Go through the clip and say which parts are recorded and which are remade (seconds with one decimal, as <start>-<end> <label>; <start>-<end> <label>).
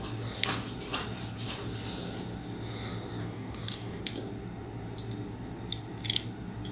0.0-3.2 recorded; 3.2-4.0 remade; 4.0-6.7 recorded